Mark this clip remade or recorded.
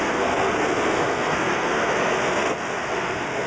remade